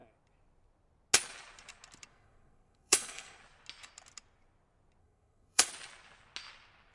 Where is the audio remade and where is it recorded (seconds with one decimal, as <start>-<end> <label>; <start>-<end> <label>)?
0.0-2.1 recorded; 2.1-3.4 remade; 3.4-5.0 recorded; 5.0-5.7 remade; 5.7-6.9 recorded